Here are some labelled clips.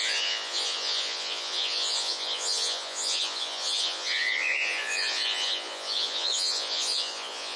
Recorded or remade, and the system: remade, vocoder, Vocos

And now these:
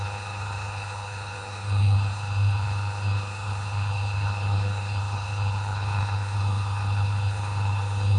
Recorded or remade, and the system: remade, codec, HILCodec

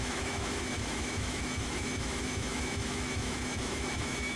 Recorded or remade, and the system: remade, autoencoder, DAC-VAE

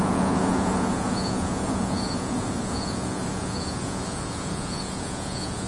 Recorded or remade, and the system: remade, vocoder, Vocos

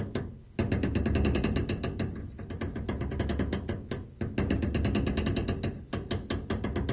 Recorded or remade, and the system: recorded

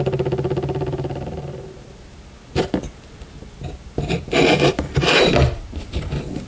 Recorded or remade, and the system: recorded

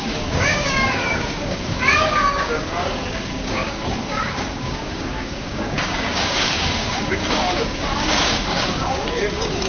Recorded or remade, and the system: remade, codec, DAC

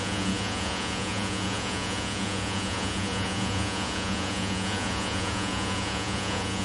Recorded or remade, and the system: remade, vocoder, Vocos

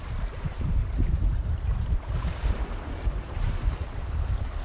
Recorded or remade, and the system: remade, vocoder, BigVGAN v2